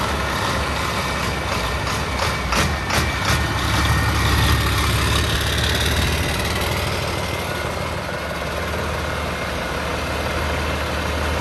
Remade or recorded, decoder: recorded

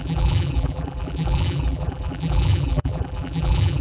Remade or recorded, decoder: remade, vocoder, BigVGAN v2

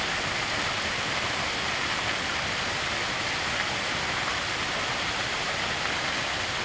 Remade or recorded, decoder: recorded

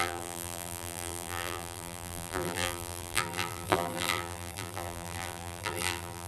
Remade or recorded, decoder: remade, vocoder, BigVGAN v2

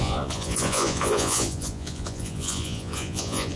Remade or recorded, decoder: remade, vocoder, Vocos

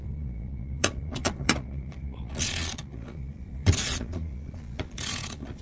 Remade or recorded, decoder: remade, vocoder, Vocos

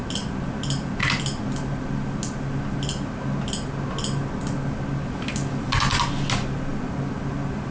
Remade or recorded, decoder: recorded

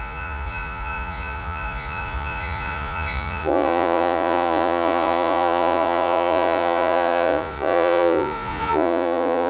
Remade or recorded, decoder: remade, vocoder, Vocos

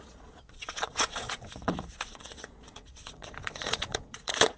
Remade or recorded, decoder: remade, vocoder, Vocos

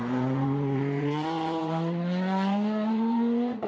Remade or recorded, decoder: remade, vocoder, Vocos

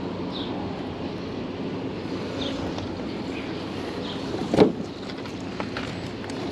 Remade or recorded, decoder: recorded